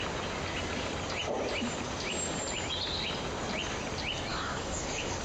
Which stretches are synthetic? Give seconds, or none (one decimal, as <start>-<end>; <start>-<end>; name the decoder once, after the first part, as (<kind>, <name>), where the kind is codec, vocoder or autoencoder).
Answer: 4.3-5.2 (codec, DAC)